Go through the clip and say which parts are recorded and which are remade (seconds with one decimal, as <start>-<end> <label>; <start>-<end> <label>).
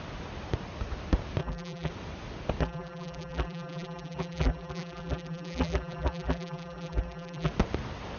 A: 0.0-1.4 recorded; 1.4-1.9 remade; 1.9-2.6 recorded; 2.6-7.5 remade; 7.5-8.2 recorded